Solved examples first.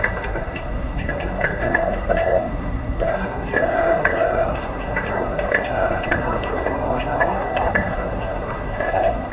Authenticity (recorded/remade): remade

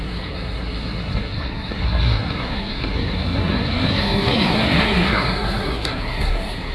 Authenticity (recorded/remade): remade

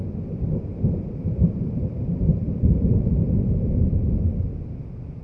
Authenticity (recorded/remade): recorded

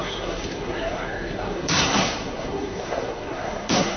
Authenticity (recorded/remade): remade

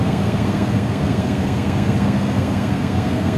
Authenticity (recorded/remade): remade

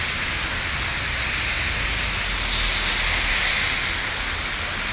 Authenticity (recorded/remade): recorded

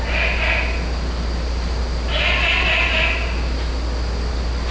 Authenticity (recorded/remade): recorded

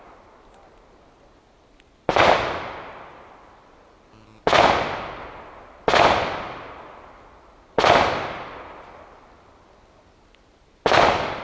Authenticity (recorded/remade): recorded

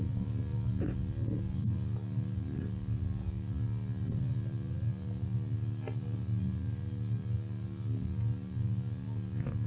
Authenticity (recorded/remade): recorded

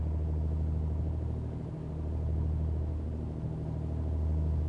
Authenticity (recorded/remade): recorded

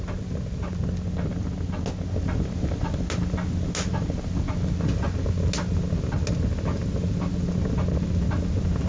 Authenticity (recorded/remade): recorded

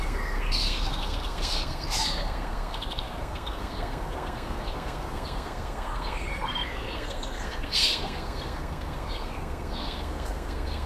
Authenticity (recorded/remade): remade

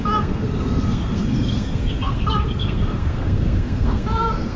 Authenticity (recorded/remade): remade